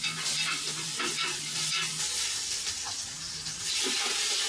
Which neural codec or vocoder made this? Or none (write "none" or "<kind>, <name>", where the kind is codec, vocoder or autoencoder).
vocoder, BigVGAN v2